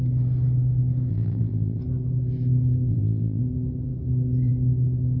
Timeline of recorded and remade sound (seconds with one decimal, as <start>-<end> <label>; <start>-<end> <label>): 0.0-1.1 recorded; 1.1-1.8 remade; 1.8-2.9 recorded; 2.9-3.4 remade; 3.4-5.2 recorded